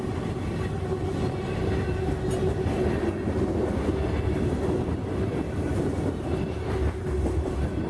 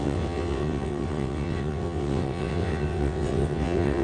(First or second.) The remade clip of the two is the second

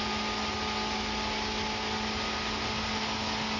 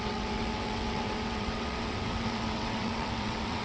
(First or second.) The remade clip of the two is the second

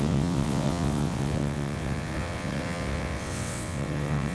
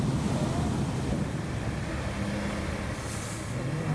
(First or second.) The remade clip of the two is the first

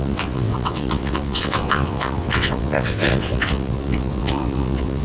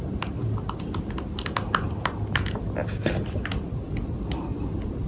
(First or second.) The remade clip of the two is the first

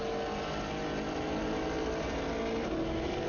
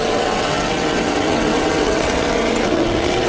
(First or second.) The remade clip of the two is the second